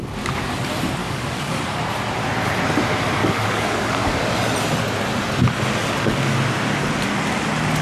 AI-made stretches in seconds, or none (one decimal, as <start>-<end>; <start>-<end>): 1.0-1.6; 3.2-4.3; 5.8-6.4